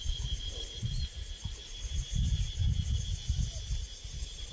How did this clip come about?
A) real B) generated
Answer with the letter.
B